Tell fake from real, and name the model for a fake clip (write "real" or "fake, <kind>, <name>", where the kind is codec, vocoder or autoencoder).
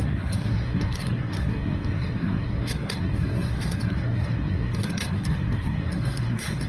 fake, codec, SNAC